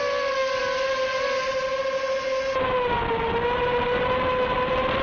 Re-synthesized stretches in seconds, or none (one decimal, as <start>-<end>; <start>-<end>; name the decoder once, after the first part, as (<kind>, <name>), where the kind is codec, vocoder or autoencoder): none